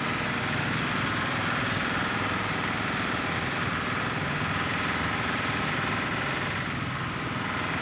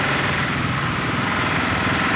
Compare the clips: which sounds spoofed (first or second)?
second